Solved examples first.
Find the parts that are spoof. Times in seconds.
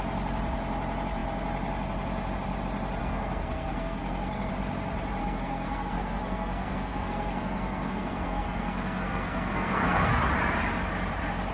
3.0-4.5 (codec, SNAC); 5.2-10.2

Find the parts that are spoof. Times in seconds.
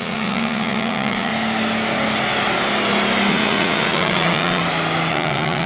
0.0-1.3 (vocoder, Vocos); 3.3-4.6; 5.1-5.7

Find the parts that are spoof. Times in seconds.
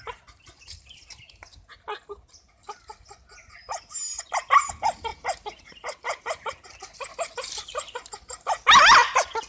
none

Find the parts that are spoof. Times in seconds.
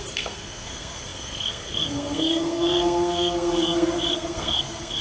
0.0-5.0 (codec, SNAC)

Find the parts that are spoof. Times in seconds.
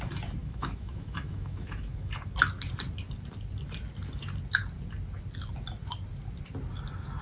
0.4-2.1 (autoencoder, DAC-VAE)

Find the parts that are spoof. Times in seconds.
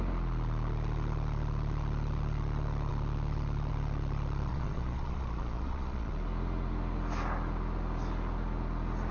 4.5-6.1 (vocoder, Vocos)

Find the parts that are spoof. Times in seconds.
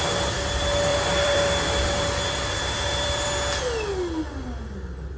0.9-3.3 (vocoder, BigVGAN v2)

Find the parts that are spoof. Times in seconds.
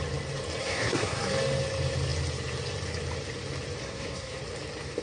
0.6-1.2 (codec, SNAC); 3.8-4.4